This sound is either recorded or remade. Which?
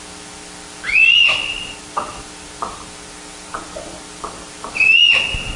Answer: recorded